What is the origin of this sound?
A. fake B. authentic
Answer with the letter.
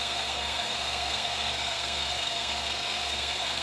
A